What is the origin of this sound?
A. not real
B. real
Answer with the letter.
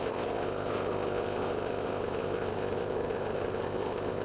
A